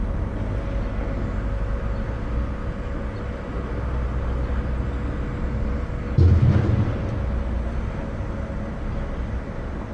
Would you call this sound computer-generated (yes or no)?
no